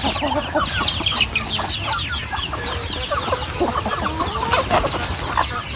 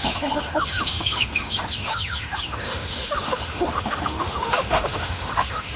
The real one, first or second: first